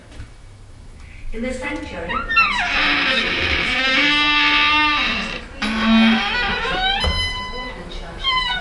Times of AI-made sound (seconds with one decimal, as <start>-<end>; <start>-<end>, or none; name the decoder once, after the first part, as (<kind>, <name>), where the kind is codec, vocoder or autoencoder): 0.0-1.7 (autoencoder, DAC-VAE); 3.1-3.8; 7.3-8.6